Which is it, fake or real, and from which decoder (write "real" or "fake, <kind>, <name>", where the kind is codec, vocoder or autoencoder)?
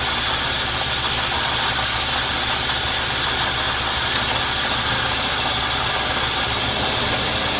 real